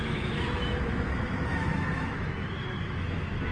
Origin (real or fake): fake